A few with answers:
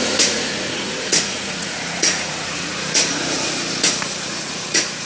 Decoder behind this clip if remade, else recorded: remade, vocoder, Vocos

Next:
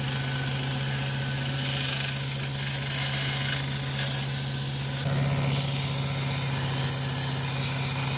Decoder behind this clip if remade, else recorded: recorded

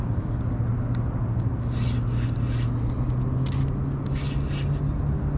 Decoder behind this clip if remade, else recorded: recorded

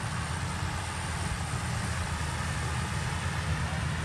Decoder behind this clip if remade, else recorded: recorded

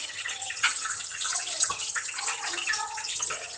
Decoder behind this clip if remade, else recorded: remade, vocoder, HiFi-GAN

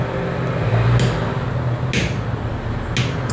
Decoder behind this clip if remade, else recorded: recorded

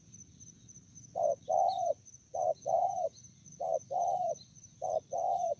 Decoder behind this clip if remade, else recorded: remade, vocoder, Vocos